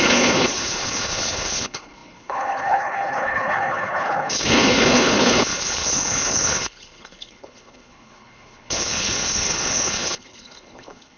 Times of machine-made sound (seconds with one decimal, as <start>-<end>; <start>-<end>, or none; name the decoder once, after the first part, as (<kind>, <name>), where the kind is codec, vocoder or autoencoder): 0.0-11.2 (codec, HILCodec)